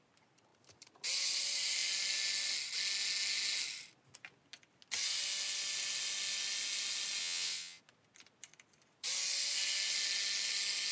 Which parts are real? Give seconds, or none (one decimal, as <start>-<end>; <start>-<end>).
0.0-7.2; 7.8-10.9